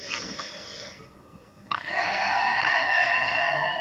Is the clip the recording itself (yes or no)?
no